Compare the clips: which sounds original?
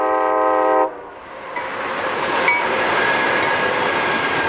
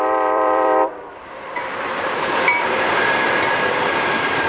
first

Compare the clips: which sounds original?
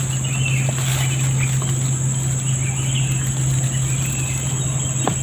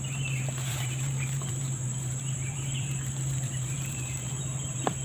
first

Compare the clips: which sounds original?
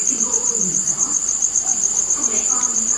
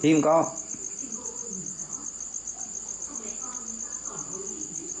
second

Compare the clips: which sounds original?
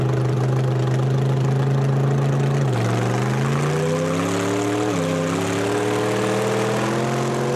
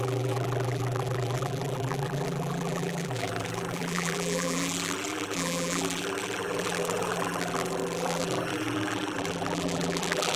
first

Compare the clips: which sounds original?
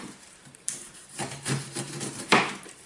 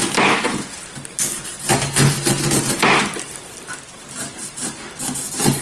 second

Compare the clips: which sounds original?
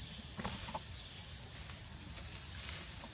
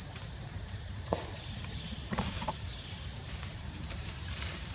first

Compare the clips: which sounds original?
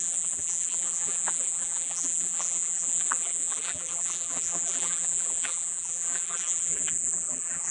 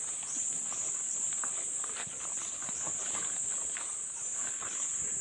second